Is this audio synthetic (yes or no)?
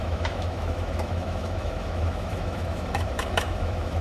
yes